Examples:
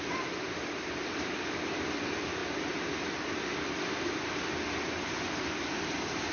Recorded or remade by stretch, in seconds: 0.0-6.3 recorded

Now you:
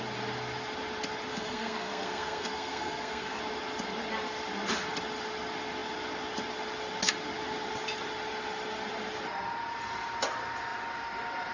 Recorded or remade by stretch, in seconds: 0.0-1.3 recorded; 1.3-3.4 remade; 3.4-11.5 recorded

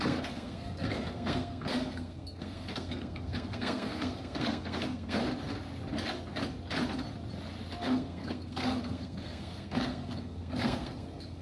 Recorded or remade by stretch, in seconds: 0.0-5.2 remade; 5.2-7.8 recorded; 7.8-11.4 remade

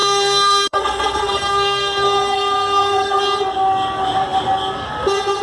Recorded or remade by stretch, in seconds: 0.0-3.2 remade; 3.2-5.4 recorded

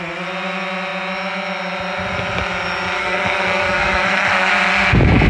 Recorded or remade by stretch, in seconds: 0.0-3.0 recorded; 3.0-4.5 remade; 4.5-5.3 recorded

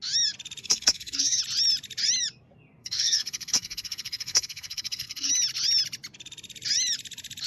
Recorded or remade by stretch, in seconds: 0.0-0.6 recorded; 0.6-1.4 remade; 1.4-2.8 recorded; 2.8-5.3 remade; 5.3-7.5 recorded